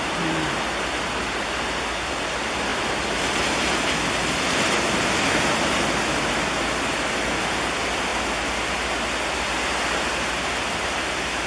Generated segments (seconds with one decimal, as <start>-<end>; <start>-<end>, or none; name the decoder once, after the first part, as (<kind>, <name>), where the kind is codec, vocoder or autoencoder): none